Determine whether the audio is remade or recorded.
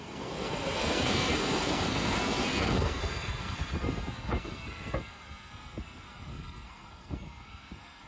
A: remade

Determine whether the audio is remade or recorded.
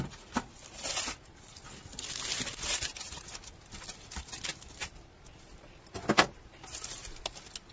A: recorded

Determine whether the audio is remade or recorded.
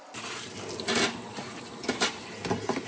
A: recorded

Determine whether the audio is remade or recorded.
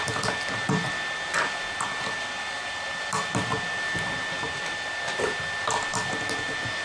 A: recorded